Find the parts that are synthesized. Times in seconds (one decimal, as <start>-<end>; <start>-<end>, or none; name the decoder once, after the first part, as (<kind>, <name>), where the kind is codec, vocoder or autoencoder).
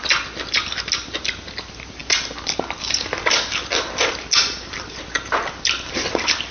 none